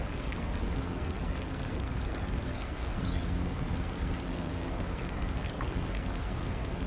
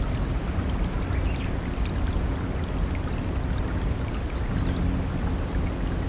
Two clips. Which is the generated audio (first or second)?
first